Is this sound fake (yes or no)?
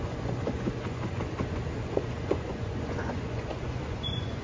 yes